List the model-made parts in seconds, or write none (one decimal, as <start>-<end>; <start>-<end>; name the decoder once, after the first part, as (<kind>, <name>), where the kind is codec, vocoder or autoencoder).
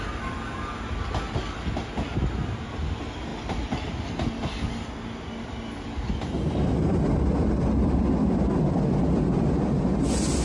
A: none